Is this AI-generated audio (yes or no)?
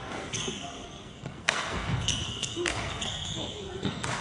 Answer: yes